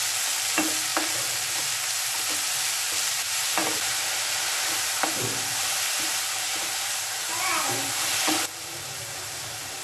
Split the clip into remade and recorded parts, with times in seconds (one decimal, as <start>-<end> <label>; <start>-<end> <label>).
0.0-0.9 recorded; 0.9-1.6 remade; 1.6-3.6 recorded; 3.6-6.2 remade; 6.2-9.8 recorded